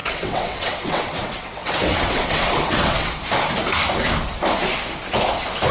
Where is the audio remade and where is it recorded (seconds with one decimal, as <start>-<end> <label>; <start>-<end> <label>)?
0.0-3.2 remade; 3.2-5.7 recorded